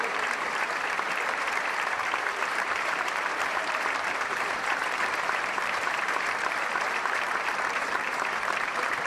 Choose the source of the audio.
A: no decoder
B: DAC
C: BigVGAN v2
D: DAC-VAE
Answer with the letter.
C